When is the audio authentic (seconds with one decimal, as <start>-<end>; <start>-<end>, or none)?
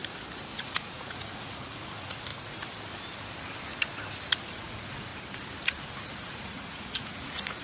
0.0-0.6; 2.3-4.5; 5.1-6.2